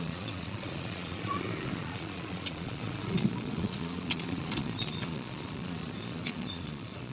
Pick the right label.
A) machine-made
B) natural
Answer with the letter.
A